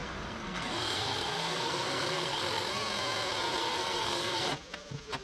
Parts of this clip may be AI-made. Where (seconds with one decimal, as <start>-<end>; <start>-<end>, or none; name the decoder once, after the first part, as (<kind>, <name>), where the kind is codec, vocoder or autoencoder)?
0.0-2.7 (codec, SNAC); 3.6-4.5